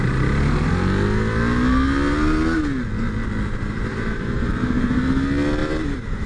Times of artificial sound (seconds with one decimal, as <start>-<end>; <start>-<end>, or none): 3.5-5.0; 5.6-6.3